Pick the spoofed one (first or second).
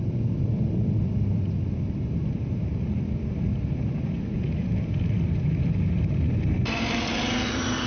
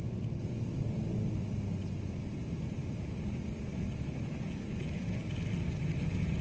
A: first